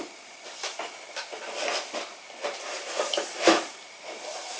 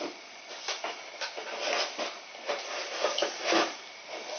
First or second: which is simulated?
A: first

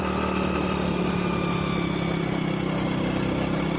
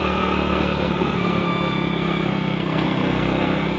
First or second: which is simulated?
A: second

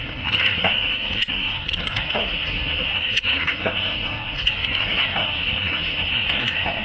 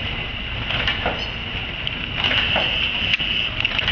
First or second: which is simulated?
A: first